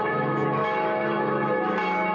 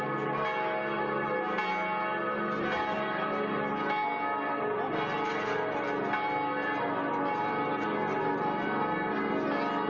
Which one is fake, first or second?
first